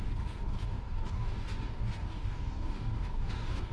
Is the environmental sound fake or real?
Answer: fake